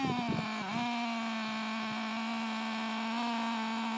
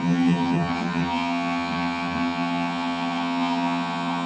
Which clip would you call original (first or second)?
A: first